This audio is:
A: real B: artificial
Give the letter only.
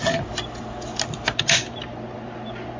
A